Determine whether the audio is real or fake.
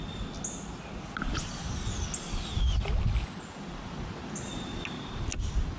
real